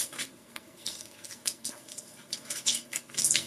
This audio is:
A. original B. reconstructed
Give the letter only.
B